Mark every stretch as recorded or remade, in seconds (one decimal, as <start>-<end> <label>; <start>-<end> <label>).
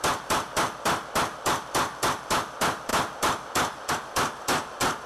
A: 0.0-5.1 recorded